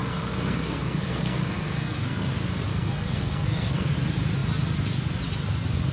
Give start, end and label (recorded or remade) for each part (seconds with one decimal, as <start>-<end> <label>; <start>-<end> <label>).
0.0-2.3 remade; 2.3-2.7 recorded; 2.7-3.9 remade; 3.9-5.9 recorded